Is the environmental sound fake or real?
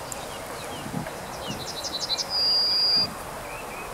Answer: real